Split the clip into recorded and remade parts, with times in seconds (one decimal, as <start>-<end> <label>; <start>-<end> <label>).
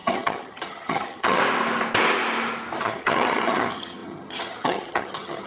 0.0-1.4 remade; 1.4-2.8 recorded; 2.8-5.5 remade